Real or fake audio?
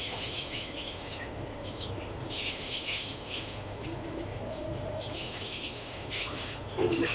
fake